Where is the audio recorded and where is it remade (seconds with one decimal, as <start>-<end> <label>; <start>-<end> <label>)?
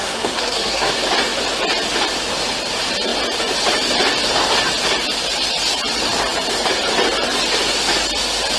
0.0-0.9 remade; 0.9-8.6 recorded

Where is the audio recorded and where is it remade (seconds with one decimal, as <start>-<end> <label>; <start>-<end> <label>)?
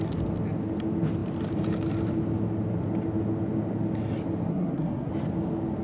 0.0-4.5 recorded; 4.5-5.1 remade; 5.1-5.8 recorded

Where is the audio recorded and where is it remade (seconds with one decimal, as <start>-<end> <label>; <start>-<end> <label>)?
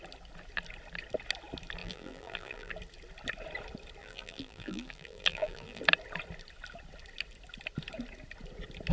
0.0-1.8 recorded; 1.8-2.7 remade; 2.7-4.0 recorded; 4.0-5.8 remade; 5.8-8.9 recorded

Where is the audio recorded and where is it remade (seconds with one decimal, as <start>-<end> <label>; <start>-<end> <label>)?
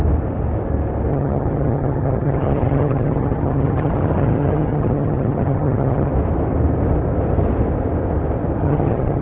0.0-1.1 recorded; 1.1-6.1 remade; 6.1-8.6 recorded; 8.6-9.2 remade